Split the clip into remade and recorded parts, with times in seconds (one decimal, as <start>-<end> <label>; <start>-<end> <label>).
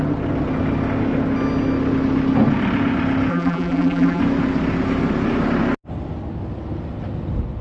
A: 0.0-3.3 recorded; 3.3-4.2 remade; 4.2-7.6 recorded